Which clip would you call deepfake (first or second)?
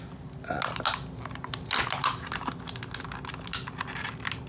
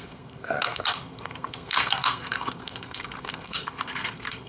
second